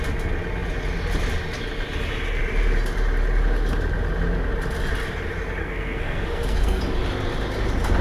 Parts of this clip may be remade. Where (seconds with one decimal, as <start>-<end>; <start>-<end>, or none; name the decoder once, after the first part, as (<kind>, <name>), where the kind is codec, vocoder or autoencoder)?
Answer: 5.6-6.8 (codec, SNAC)